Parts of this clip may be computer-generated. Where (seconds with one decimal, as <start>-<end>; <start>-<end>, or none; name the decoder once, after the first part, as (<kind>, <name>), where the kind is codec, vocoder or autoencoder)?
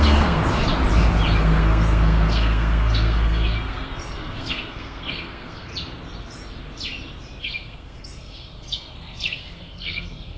0.0-0.4 (codec, SNAC); 1.4-5.7; 7.4-10.4